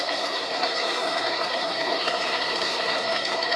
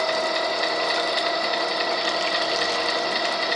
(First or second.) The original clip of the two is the second